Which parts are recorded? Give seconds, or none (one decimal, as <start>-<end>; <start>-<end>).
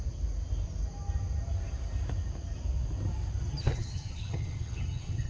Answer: 0.0-3.4